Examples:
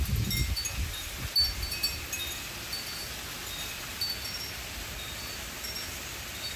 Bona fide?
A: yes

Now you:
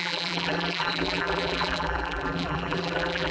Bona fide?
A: no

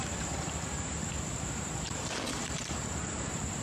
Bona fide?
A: no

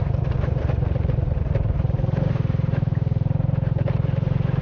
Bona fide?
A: no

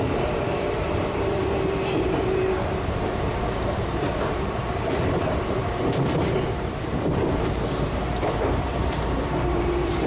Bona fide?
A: no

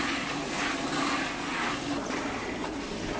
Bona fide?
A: yes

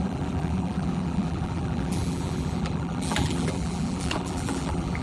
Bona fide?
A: no